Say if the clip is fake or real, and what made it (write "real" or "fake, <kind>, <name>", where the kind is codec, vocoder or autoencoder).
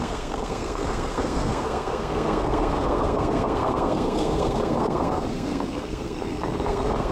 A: fake, codec, SNAC